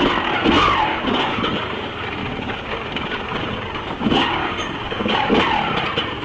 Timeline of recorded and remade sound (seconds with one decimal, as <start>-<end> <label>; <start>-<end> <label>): 0.0-0.9 recorded; 0.9-1.5 remade; 1.5-2.2 recorded; 2.2-5.3 remade; 5.3-6.2 recorded